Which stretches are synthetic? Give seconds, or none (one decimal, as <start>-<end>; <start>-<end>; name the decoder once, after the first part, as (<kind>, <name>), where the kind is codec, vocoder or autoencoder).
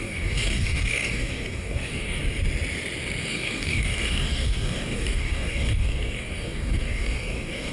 0.0-2.2 (codec, DAC); 3.2-7.7